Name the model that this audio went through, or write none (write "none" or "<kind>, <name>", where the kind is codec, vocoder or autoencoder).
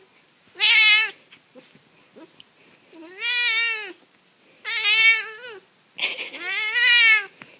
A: none